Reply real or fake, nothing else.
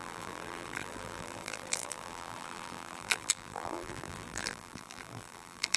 fake